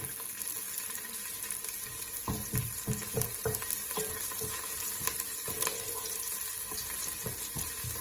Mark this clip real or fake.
real